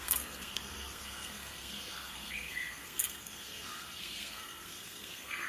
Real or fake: fake